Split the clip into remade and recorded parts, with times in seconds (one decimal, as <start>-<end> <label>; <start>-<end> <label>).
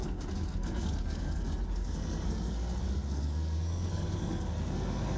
0.0-5.2 remade